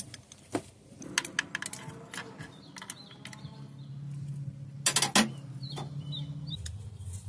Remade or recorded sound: recorded